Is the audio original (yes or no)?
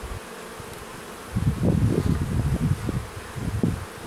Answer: yes